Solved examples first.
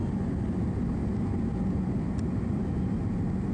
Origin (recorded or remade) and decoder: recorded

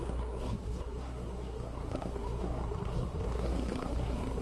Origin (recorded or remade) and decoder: remade, codec, SNAC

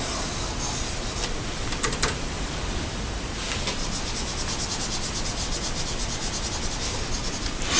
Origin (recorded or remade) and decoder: recorded